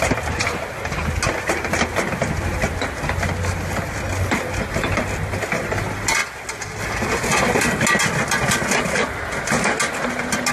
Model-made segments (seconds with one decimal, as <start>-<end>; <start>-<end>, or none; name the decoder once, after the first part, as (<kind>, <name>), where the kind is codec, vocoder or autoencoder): none